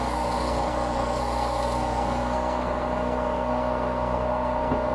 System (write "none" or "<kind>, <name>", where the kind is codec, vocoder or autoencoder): codec, SNAC